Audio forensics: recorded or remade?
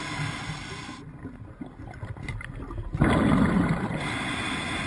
recorded